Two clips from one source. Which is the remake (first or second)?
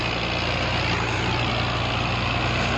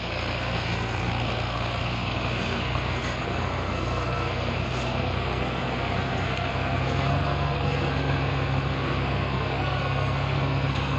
second